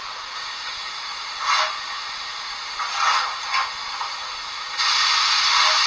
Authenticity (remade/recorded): recorded